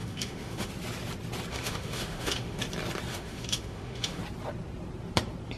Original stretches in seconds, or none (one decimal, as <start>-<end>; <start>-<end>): 0.7-1.5; 2.6-3.1; 4.2-5.6